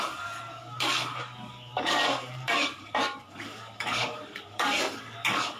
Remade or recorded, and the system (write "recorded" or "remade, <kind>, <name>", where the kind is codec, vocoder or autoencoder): remade, codec, DAC